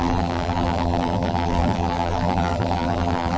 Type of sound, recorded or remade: remade